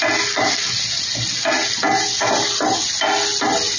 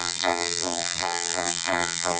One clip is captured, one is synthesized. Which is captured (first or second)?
first